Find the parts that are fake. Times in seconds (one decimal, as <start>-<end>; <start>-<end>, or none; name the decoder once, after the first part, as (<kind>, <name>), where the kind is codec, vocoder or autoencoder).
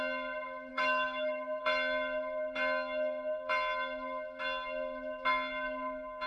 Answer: 0.7-1.6 (autoencoder, DAC-VAE)